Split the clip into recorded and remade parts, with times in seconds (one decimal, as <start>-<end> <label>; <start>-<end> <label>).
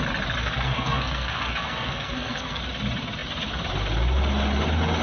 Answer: 0.0-0.4 recorded; 0.4-2.6 remade; 2.6-5.0 recorded